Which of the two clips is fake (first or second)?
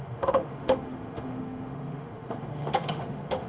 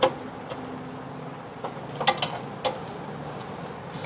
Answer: first